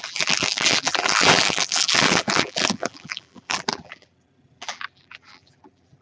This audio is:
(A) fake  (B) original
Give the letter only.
A